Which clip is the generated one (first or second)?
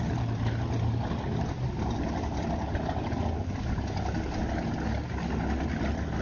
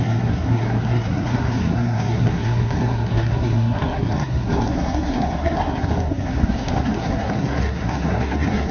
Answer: second